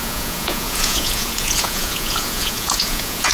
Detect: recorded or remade remade